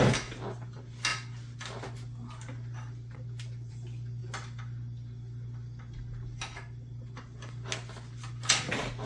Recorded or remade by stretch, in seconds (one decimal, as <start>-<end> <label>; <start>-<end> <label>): 0.0-9.1 recorded